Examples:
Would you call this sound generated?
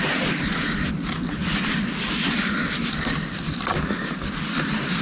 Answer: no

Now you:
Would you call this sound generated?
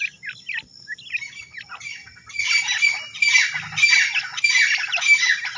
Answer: no